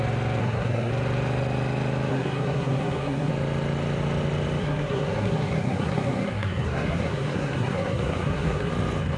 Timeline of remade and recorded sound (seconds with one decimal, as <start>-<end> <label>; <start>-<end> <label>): 0.0-0.4 recorded; 0.4-0.9 remade; 0.9-2.1 recorded; 2.1-3.3 remade; 3.3-4.6 recorded; 4.6-8.7 remade; 8.7-9.2 recorded